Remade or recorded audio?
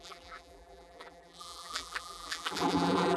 remade